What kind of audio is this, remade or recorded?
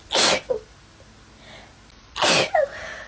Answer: recorded